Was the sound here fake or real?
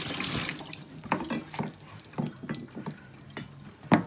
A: real